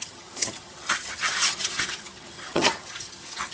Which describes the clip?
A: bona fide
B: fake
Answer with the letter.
B